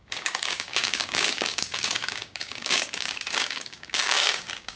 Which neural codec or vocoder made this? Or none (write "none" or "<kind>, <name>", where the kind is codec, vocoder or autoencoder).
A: codec, DAC